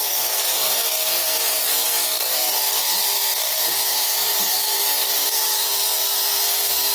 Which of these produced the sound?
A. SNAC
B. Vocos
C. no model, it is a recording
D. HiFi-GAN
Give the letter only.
A